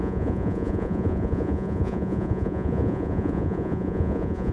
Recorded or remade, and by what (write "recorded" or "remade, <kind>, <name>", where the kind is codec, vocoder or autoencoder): remade, vocoder, Vocos